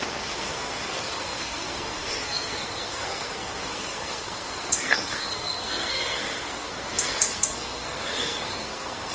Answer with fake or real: fake